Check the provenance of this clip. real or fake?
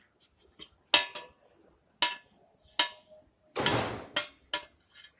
real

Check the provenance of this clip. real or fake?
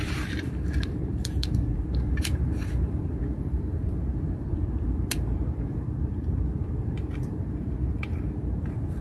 fake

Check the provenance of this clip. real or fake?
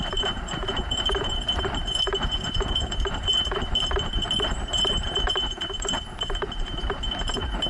fake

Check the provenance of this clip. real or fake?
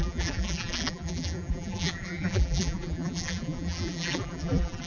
fake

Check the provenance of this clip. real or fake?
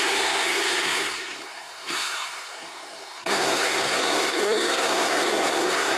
fake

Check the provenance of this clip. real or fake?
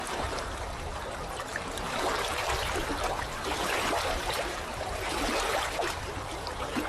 fake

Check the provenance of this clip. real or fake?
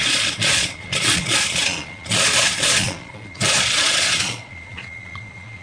fake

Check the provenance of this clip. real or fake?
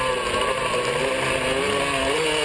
real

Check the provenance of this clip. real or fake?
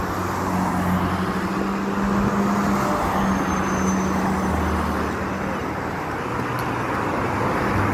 real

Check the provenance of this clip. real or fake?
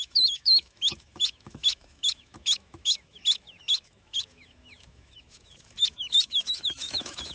fake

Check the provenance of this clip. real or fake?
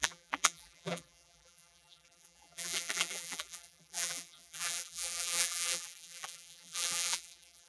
fake